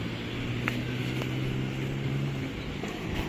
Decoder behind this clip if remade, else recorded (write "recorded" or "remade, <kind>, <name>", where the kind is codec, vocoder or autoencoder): recorded